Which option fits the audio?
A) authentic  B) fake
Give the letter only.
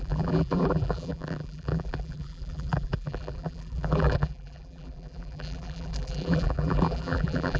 B